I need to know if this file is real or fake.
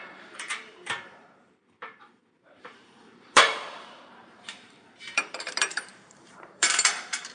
fake